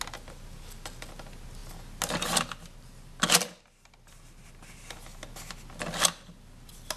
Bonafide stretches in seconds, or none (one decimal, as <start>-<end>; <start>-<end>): 0.0-7.0